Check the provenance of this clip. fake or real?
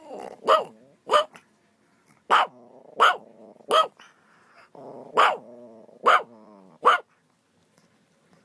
real